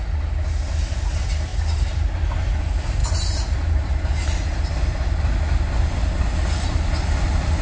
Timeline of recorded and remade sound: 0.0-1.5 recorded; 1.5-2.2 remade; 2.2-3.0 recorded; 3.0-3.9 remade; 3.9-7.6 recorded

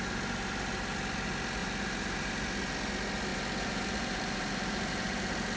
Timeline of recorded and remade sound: 0.0-1.6 recorded; 1.6-2.3 remade; 2.3-3.3 recorded; 3.3-4.9 remade; 4.9-5.6 recorded